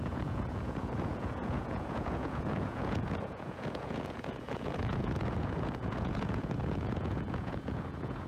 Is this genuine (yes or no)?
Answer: no